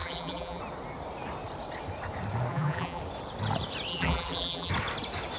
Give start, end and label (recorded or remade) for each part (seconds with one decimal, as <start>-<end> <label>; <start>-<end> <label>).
0.0-0.6 remade; 0.6-2.5 recorded; 2.5-3.0 remade; 3.0-3.9 recorded; 3.9-4.7 remade; 4.7-5.4 recorded